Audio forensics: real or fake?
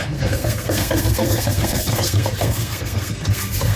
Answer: fake